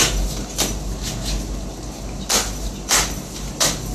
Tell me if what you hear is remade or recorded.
recorded